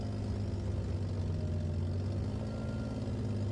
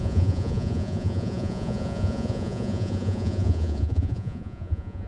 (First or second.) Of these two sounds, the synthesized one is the second